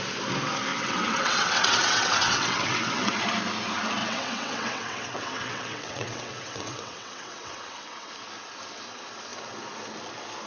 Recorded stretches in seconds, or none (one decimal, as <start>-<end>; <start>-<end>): 0.0-0.7; 3.2-4.0; 8.1-10.5